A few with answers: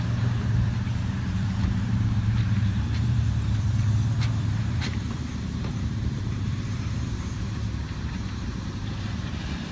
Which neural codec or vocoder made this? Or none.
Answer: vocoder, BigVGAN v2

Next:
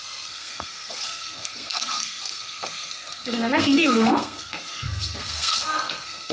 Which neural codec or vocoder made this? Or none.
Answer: codec, SNAC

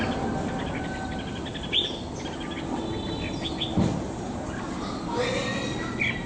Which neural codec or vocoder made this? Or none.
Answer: none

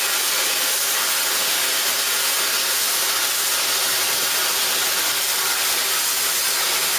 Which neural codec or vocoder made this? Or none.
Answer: none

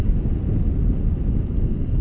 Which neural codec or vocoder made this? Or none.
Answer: none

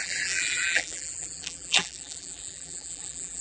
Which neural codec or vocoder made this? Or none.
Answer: vocoder, BigVGAN v2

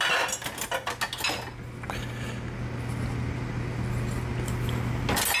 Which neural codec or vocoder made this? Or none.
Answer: none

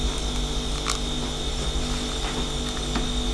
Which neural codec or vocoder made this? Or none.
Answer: none